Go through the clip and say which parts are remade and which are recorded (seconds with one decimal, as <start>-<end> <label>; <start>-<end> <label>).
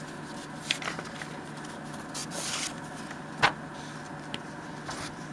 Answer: 0.0-5.3 recorded